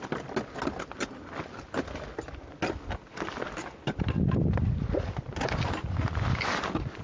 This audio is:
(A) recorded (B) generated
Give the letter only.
A